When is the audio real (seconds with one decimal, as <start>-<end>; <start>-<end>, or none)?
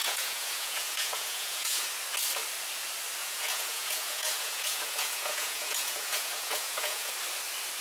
1.9-3.2; 7.1-7.8